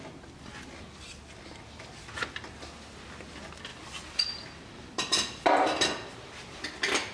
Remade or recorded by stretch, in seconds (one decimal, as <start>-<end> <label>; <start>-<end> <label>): 0.0-7.1 recorded